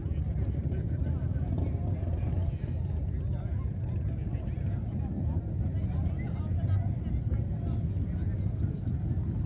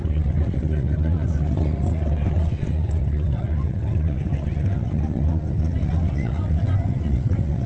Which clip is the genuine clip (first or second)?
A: first